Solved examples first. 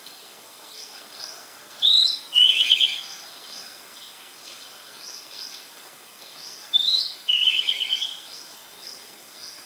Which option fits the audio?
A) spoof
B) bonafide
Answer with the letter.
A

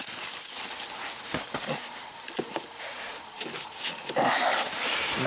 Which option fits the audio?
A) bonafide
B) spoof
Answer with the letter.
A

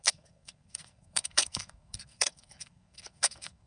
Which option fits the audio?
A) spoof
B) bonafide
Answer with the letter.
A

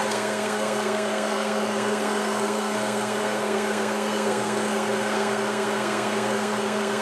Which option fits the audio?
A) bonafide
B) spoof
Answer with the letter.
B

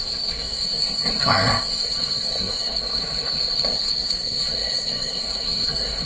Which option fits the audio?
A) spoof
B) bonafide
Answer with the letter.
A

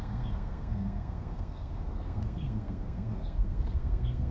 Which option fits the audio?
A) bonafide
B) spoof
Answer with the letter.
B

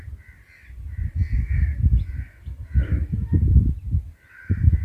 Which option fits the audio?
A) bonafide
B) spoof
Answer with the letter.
A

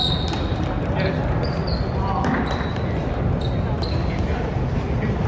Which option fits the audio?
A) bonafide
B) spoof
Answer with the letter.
A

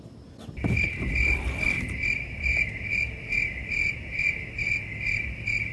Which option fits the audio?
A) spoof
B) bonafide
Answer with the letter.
B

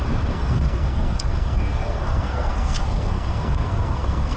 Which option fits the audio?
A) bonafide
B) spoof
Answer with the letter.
B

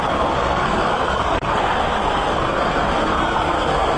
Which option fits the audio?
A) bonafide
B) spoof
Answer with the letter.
B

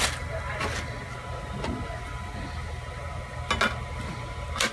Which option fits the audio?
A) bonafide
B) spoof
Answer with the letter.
A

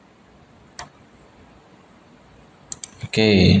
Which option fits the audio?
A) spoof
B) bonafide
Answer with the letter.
B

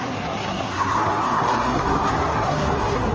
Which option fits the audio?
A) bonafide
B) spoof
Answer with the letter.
B